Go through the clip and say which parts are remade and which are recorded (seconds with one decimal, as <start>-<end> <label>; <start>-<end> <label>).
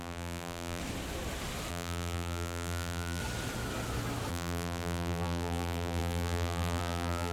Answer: 0.0-0.8 remade; 0.8-1.7 recorded; 1.7-3.2 remade; 3.2-4.3 recorded; 4.3-7.3 remade